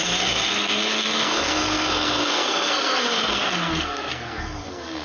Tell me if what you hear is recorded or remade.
remade